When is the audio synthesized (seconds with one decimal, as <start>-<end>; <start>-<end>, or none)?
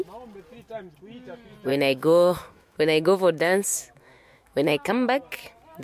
1.7-4.9